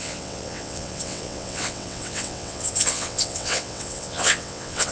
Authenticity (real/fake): fake